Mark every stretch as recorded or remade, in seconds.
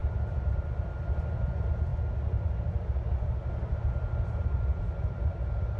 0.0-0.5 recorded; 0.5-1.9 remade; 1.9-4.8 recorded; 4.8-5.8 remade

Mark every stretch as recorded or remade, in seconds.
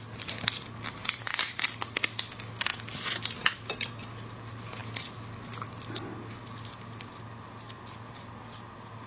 0.0-1.0 recorded; 1.0-1.6 remade; 1.6-9.1 recorded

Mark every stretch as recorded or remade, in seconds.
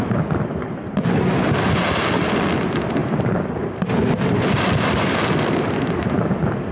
0.0-6.7 remade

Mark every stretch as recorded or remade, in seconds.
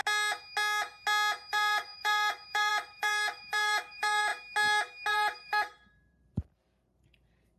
0.0-1.5 recorded; 1.5-4.3 remade; 4.3-5.1 recorded; 5.1-7.6 remade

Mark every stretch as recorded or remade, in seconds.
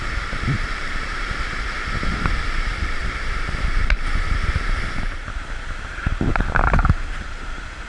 0.0-1.1 remade; 1.1-2.8 recorded; 2.8-7.9 remade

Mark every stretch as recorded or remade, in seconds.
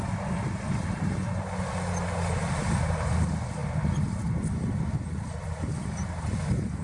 0.0-6.8 recorded